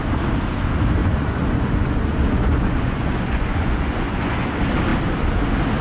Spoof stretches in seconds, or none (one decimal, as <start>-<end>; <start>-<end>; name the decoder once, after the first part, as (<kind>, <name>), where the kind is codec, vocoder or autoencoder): 1.0-4.5 (vocoder, Vocos)